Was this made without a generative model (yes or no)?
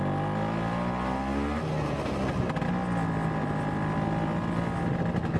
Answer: yes